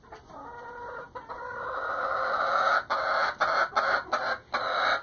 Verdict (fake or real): real